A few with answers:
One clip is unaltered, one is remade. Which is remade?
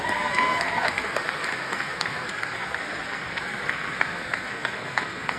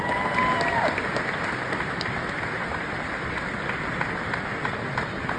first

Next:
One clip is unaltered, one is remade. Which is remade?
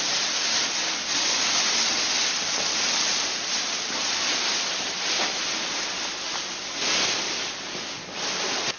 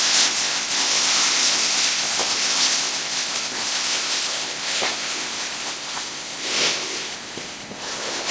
second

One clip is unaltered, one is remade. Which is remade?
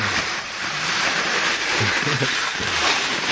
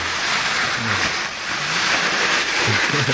first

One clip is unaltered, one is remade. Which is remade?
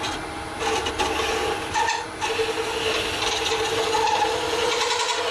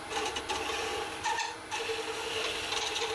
second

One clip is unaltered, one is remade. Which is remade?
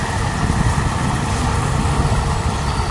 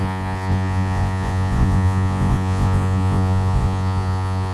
second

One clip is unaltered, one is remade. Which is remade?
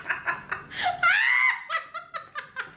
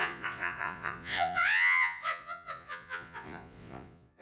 second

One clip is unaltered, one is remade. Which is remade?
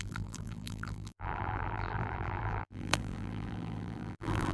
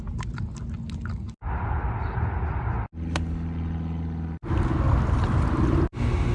first